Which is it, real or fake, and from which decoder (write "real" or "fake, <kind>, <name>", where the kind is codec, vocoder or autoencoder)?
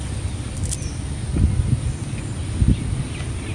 real